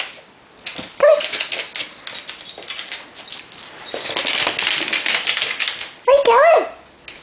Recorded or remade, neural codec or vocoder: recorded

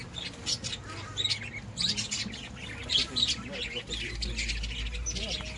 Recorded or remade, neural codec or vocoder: recorded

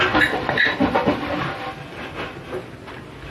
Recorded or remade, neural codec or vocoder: recorded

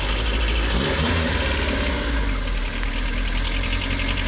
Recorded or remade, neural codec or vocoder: recorded